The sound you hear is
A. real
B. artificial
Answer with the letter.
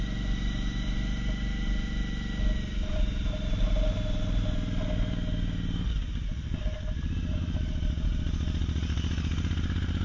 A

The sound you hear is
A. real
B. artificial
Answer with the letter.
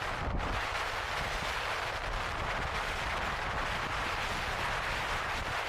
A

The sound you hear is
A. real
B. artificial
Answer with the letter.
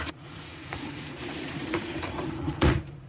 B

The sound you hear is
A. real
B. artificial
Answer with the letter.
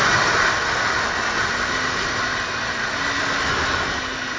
A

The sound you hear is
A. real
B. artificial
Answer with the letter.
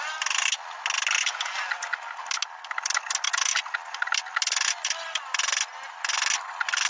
A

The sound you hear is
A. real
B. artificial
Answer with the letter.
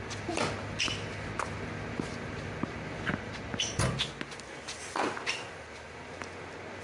A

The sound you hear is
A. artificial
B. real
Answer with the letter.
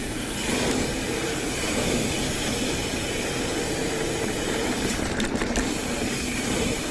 A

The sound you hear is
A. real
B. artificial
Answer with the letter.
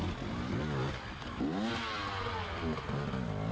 A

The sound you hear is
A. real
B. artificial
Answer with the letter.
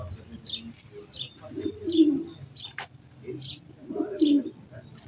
A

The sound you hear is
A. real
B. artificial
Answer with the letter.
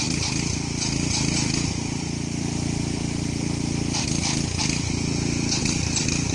B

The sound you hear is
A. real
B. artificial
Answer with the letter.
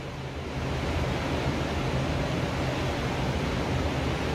A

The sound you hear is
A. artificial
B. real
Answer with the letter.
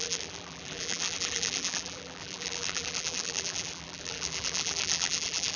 A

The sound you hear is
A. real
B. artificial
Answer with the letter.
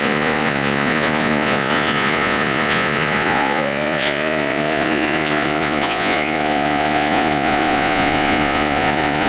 B